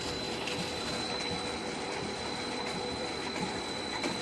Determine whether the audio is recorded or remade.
remade